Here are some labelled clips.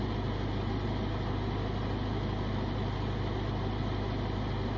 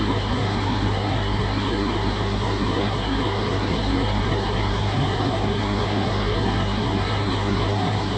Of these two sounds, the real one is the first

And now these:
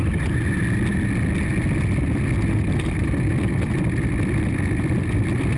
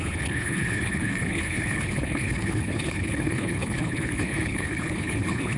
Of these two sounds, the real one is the first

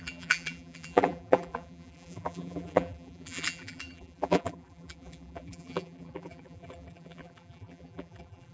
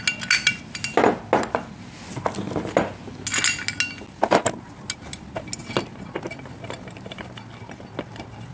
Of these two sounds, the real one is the second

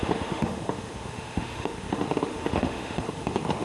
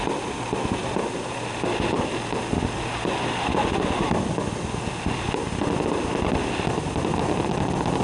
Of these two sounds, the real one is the second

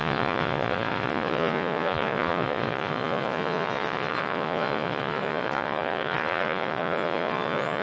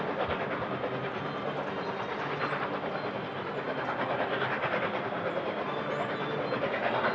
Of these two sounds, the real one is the second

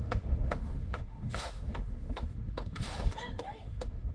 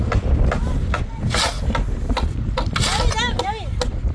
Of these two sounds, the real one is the second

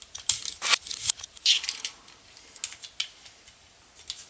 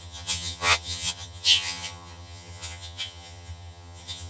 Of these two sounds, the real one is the first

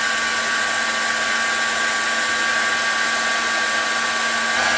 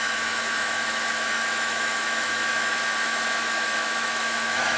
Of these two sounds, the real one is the first